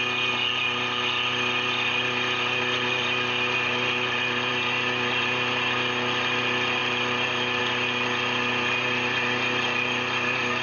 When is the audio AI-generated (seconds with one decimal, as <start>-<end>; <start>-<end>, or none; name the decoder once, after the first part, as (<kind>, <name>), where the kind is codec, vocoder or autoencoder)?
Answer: none